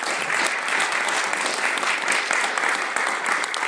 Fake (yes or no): no